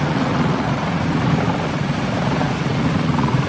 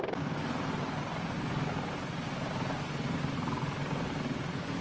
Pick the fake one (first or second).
first